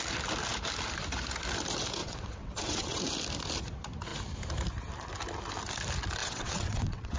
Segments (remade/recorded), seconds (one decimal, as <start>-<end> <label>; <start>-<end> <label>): 0.0-2.0 recorded; 2.0-3.0 remade; 3.0-6.2 recorded; 6.2-7.2 remade

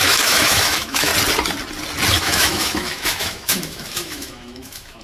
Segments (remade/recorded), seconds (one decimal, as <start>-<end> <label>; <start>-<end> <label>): 0.0-1.1 remade; 1.1-2.2 recorded; 2.2-5.0 remade

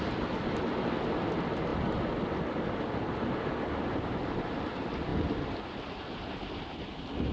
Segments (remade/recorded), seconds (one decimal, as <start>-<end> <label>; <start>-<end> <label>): 0.0-7.3 recorded

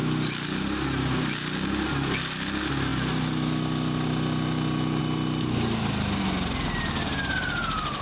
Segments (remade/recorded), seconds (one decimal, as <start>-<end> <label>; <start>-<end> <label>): 0.0-8.0 recorded

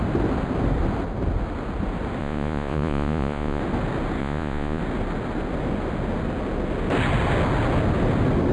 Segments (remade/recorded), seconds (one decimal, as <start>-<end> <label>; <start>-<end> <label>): 0.0-2.2 recorded; 2.2-3.6 remade; 3.6-4.2 recorded; 4.2-4.8 remade; 4.8-8.5 recorded

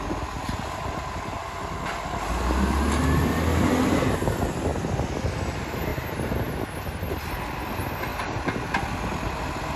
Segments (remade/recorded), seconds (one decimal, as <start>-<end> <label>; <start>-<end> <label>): 0.0-8.1 recorded; 8.1-9.3 remade; 9.3-9.8 recorded

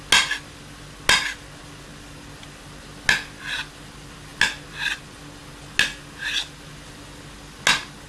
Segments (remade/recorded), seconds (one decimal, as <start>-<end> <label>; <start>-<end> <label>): 0.0-8.1 recorded